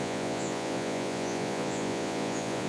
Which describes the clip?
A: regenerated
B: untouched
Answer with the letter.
A